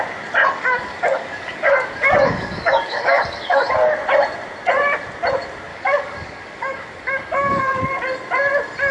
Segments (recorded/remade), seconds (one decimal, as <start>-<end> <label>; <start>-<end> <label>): 0.0-0.4 recorded; 0.4-3.7 remade; 3.7-5.7 recorded; 5.7-7.8 remade; 7.8-8.9 recorded